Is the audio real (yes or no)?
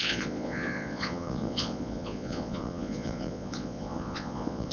no